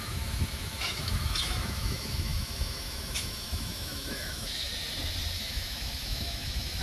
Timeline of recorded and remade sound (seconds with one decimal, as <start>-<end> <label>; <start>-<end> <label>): 0.0-4.7 remade; 4.7-5.4 recorded; 5.4-6.8 remade